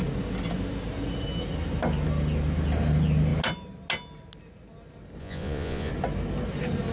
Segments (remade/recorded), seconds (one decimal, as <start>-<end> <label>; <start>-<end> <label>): 0.0-5.2 recorded; 5.2-5.9 remade; 5.9-6.9 recorded